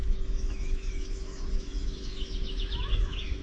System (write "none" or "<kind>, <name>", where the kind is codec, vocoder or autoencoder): autoencoder, DAC-VAE